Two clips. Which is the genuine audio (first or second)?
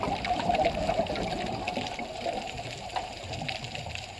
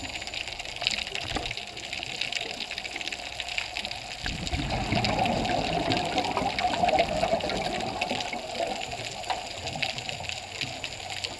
second